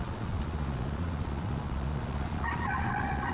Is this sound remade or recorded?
remade